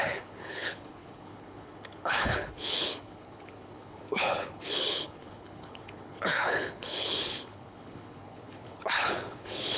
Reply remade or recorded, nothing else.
remade